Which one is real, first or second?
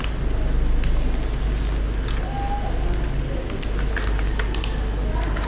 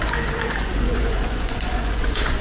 first